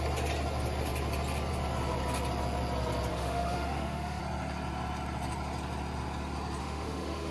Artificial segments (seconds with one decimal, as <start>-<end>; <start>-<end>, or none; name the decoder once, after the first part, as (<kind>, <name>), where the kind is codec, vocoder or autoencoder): 3.1-4.2 (autoencoder, DAC-VAE); 6.6-7.3